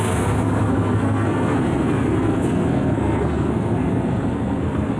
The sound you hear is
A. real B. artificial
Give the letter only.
B